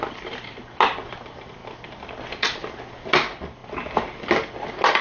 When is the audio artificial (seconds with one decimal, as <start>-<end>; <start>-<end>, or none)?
none